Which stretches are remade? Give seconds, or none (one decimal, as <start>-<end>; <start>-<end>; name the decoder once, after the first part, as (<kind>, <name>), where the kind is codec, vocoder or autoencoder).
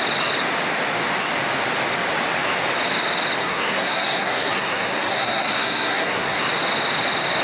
3.4-6.4 (codec, SNAC)